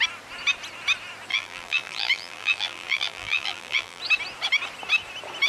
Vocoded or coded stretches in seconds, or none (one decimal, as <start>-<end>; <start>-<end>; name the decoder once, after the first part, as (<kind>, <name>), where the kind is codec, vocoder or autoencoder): 1.3-4.0 (vocoder, BigVGAN v2)